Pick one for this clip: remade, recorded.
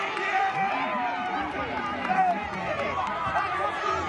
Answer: recorded